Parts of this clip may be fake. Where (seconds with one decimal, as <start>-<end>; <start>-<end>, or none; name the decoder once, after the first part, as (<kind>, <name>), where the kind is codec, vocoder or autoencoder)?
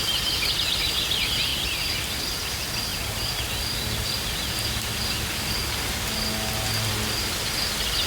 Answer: none